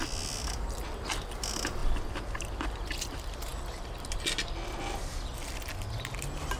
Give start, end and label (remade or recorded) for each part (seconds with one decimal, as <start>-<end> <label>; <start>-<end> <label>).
0.0-6.6 recorded